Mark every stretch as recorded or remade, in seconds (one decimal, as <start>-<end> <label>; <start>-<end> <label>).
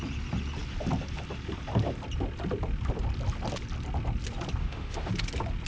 0.0-4.6 recorded; 4.6-5.1 remade; 5.1-5.7 recorded